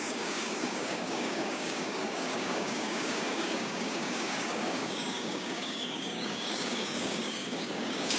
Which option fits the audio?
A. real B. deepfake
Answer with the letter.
B